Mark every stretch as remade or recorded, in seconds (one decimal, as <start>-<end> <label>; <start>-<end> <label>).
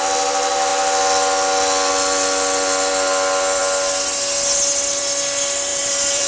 0.0-5.7 recorded; 5.7-6.3 remade